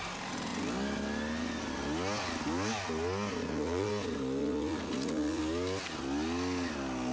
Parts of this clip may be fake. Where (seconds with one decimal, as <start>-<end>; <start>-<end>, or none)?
3.4-3.9; 4.4-5.4